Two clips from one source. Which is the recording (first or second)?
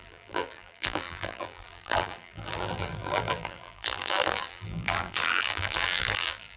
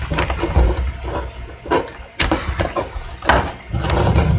second